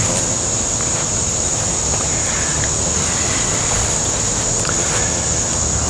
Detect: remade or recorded recorded